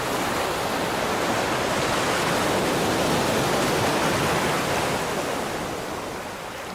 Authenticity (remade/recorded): recorded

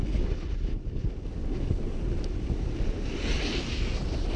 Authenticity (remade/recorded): recorded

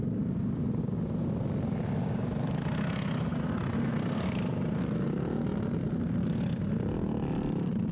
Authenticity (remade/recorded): recorded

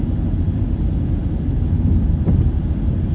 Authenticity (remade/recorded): recorded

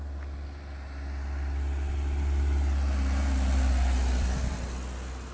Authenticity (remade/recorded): recorded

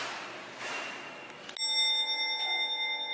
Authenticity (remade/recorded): recorded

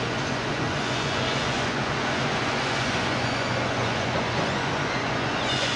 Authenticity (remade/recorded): remade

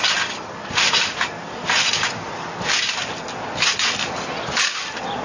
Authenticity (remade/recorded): recorded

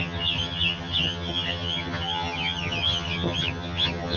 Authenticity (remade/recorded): remade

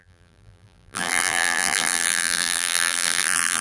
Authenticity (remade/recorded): remade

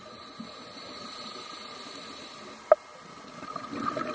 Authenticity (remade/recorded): recorded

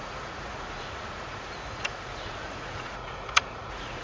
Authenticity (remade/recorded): remade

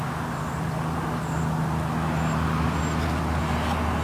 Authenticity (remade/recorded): recorded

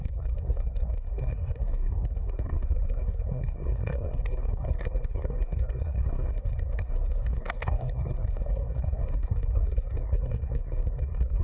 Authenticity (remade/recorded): remade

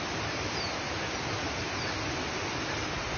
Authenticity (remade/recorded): recorded